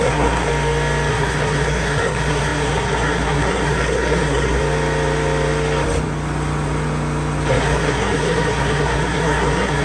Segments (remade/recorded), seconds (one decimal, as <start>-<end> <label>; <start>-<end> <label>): 0.0-0.5 remade; 0.5-1.1 recorded; 1.1-4.6 remade; 4.6-7.5 recorded; 7.5-9.8 remade